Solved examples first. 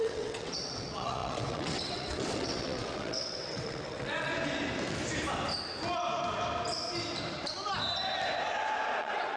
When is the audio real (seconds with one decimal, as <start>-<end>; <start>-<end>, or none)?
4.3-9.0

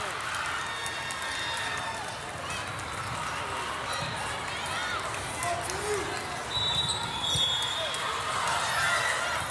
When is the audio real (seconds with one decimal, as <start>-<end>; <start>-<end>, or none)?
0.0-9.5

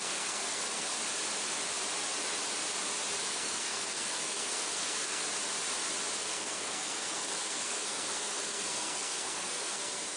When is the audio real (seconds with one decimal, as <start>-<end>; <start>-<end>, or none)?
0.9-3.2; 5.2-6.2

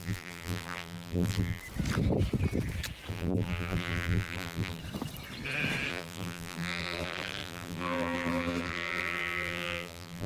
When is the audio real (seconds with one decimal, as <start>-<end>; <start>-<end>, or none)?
1.6-3.1; 4.8-5.9

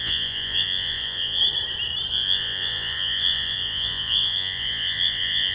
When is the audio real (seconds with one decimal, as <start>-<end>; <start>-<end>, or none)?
1.4-2.1